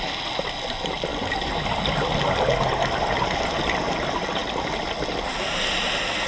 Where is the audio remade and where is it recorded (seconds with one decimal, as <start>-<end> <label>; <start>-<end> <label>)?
0.0-6.3 recorded